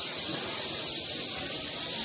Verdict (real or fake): real